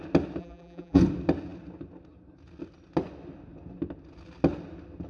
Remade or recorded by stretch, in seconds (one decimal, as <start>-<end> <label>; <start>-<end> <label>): 0.0-0.4 recorded; 0.4-1.0 remade; 1.0-5.1 recorded